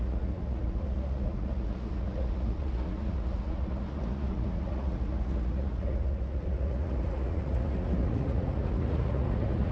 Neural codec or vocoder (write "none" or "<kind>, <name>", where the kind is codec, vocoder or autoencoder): vocoder, Vocos